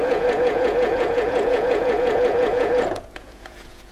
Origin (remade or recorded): remade